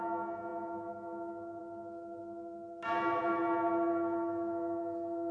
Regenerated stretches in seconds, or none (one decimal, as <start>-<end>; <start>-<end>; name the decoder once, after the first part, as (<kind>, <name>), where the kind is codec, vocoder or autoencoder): none